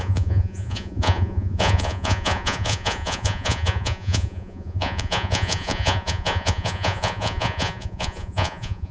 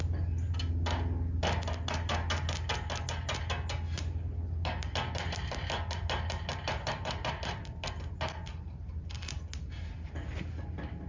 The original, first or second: second